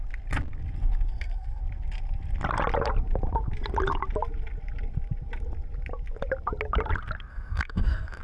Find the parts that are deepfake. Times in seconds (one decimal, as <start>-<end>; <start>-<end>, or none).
1.1-1.6; 7.3-8.2